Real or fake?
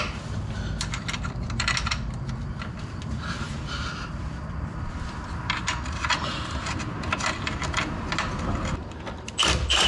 fake